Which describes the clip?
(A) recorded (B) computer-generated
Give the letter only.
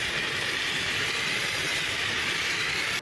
B